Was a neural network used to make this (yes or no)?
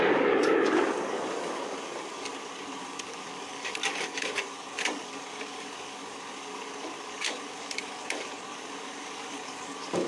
yes